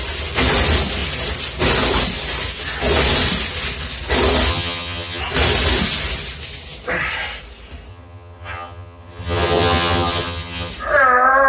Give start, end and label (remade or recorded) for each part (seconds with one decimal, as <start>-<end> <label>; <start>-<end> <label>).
0.0-4.5 recorded; 4.5-5.2 remade; 5.2-7.9 recorded; 7.9-10.7 remade; 10.7-11.5 recorded